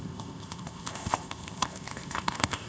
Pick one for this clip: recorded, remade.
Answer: remade